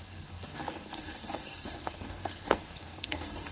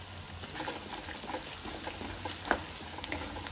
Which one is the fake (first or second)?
first